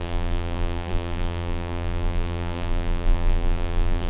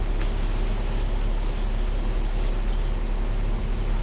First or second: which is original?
second